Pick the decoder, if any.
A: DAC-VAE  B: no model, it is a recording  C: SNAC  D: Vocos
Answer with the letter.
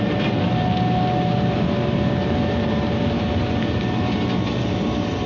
B